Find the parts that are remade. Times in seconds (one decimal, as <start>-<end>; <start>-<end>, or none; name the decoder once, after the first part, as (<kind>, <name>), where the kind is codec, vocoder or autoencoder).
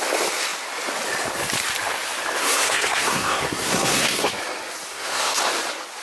2.4-4.3 (codec, SNAC); 4.9-5.4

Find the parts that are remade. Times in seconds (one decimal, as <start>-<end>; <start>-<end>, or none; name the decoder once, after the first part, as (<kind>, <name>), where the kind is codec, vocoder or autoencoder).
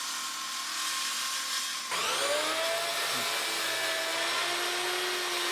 none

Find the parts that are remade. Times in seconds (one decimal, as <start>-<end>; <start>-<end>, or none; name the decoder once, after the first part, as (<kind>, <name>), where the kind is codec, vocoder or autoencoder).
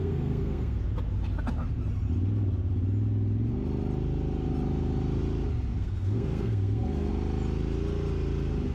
0.0-0.8 (codec, SNAC); 5.7-7.1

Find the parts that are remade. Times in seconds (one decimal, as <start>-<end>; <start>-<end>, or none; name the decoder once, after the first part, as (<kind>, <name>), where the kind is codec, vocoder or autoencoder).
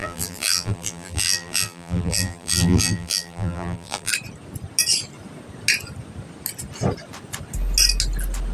0.0-4.1 (vocoder, BigVGAN v2)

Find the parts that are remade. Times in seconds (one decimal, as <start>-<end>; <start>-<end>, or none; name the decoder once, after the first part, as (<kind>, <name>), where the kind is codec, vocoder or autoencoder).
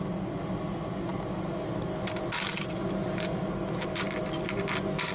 none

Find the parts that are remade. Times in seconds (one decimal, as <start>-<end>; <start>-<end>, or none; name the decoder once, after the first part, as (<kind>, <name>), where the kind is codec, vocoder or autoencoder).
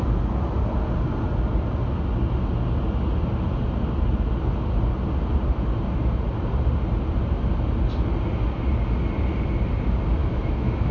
10.2-10.9 (autoencoder, DAC-VAE)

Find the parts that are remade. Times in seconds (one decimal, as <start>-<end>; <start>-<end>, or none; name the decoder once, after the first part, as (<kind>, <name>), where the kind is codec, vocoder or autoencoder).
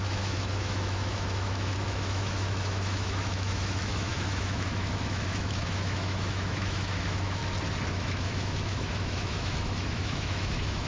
0.0-7.4 (autoencoder, DAC-VAE); 7.9-10.9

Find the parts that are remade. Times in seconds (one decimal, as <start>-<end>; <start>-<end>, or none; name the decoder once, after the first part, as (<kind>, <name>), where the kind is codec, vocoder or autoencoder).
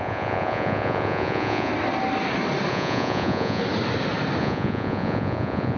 0.0-1.7 (vocoder, Vocos); 2.7-3.6; 4.4-5.8